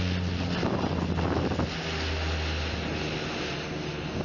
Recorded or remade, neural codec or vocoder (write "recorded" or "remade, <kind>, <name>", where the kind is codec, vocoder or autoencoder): recorded